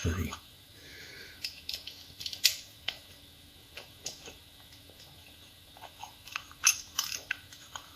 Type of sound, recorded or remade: remade